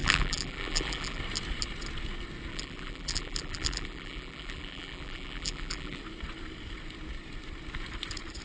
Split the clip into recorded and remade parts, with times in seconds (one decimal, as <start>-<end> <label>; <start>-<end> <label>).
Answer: 0.0-1.2 remade; 1.2-2.5 recorded; 2.5-6.0 remade; 6.0-8.4 recorded